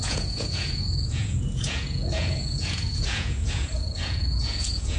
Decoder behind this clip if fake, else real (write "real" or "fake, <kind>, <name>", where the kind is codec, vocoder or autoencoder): fake, vocoder, Vocos